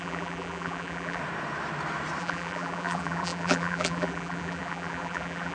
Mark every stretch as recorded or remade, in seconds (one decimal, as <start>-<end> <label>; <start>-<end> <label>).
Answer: 0.0-1.2 remade; 1.2-2.2 recorded; 2.2-5.5 remade